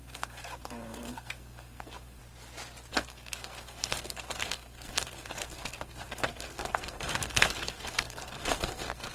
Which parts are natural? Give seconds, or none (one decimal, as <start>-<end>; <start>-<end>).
2.2-2.9